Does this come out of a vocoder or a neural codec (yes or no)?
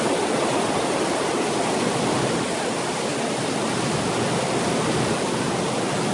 no